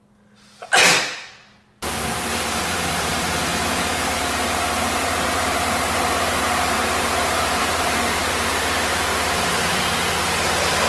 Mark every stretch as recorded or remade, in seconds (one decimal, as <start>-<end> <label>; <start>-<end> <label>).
0.0-3.1 recorded; 3.1-8.2 remade; 8.2-9.7 recorded; 9.7-10.5 remade; 10.5-10.9 recorded